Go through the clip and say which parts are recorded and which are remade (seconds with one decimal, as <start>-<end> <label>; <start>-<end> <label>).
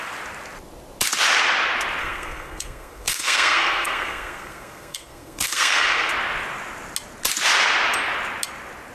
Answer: 0.0-2.0 recorded; 2.0-6.1 remade; 6.1-8.9 recorded